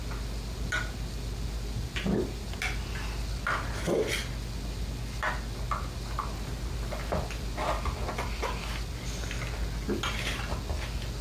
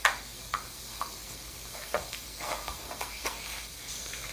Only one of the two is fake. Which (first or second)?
second